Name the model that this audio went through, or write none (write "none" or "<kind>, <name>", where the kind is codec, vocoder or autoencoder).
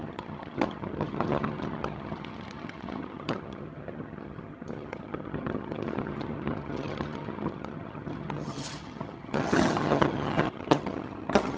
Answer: vocoder, HiFi-GAN